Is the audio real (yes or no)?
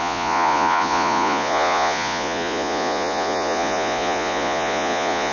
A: no